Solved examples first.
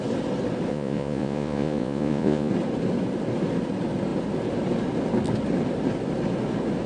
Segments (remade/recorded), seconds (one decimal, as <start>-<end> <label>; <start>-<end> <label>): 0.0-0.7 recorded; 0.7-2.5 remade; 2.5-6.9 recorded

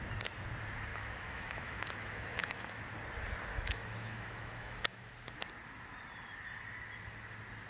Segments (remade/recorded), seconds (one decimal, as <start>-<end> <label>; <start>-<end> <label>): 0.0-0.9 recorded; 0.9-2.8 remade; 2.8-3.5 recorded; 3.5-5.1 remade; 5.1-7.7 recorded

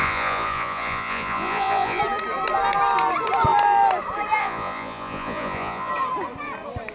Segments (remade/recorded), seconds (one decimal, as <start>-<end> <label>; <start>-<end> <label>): 0.0-2.0 remade; 2.0-4.4 recorded; 4.4-5.9 remade; 5.9-6.9 recorded